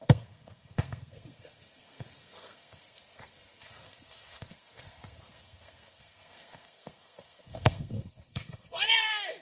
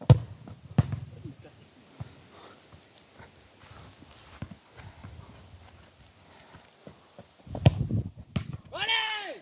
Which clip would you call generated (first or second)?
first